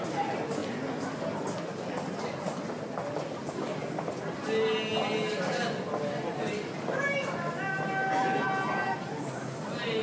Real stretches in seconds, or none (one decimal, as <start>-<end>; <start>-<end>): 0.0-10.0